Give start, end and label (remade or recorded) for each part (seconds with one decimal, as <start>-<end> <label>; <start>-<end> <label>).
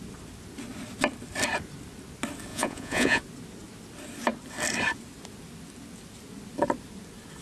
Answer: 0.0-2.5 recorded; 2.5-3.2 remade; 3.2-7.4 recorded